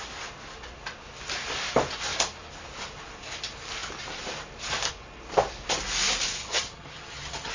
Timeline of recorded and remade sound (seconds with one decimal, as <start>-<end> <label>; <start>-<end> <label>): 0.0-6.4 recorded; 6.4-7.5 remade